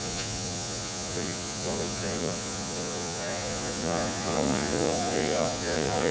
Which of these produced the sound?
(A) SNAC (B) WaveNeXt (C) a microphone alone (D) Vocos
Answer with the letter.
D